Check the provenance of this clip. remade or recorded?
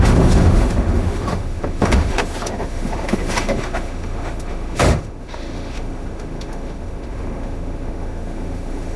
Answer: remade